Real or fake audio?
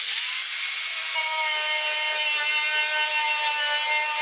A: real